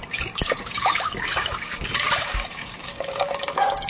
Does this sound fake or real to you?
fake